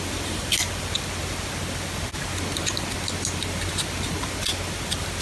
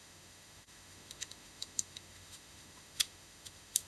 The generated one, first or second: second